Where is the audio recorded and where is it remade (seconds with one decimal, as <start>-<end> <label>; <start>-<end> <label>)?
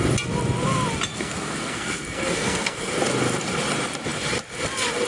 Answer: 0.0-1.1 recorded; 1.1-2.9 remade; 2.9-5.1 recorded